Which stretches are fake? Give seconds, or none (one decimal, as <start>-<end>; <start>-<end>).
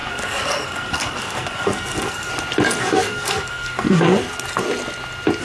0.0-2.3; 2.8-4.1